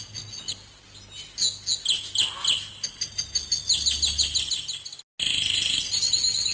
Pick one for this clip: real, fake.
real